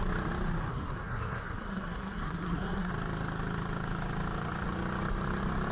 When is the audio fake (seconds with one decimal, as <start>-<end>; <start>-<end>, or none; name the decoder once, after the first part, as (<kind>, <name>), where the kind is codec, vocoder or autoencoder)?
0.7-2.9 (codec, SNAC)